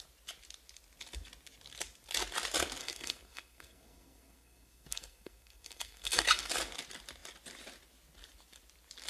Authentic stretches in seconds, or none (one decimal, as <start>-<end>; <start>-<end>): 0.0-2.8; 6.5-9.1